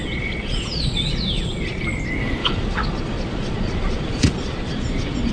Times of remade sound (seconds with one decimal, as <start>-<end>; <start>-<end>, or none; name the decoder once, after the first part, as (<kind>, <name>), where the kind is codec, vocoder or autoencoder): 0.0-1.8 (vocoder, Vocos); 2.4-5.3